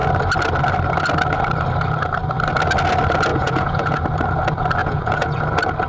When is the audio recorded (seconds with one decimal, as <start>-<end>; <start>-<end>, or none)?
0.0-3.3; 4.0-4.8; 5.4-5.9